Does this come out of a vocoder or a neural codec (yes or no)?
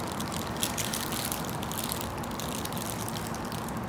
no